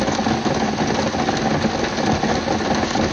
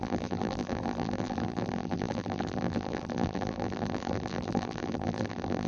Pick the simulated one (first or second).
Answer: second